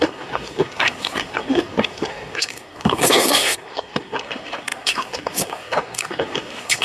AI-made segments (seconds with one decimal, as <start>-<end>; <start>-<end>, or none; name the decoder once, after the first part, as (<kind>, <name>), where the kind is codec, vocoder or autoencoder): 0.0-6.8 (codec, SNAC)